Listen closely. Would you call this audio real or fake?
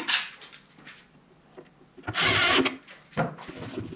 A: real